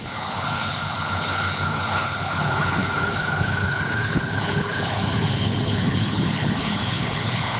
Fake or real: fake